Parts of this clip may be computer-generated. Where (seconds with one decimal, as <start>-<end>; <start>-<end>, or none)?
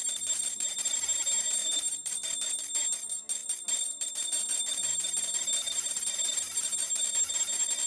1.6-2.6